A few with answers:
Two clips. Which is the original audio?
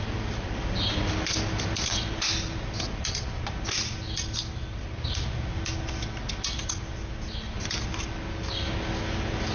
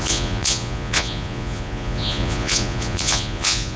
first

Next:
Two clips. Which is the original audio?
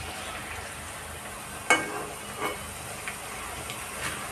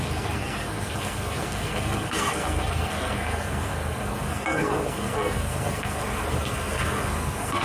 first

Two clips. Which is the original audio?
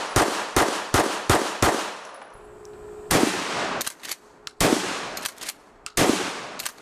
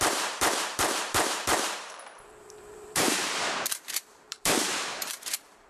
first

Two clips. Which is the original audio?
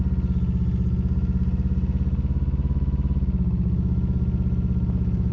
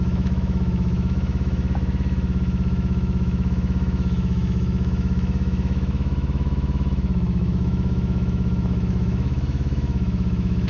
first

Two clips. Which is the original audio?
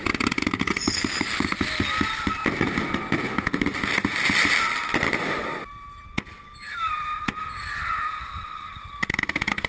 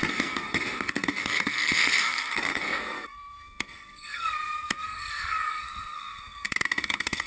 first